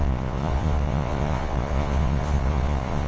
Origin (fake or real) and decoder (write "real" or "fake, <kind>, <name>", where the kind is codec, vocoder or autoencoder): fake, vocoder, Vocos